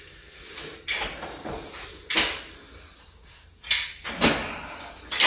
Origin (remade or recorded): recorded